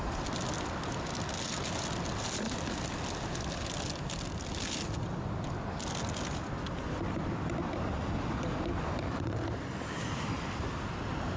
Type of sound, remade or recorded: recorded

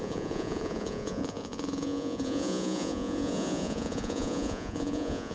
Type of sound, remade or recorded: remade